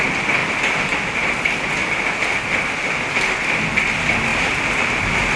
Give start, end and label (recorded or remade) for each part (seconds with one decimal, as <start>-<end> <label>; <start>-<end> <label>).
0.0-5.4 recorded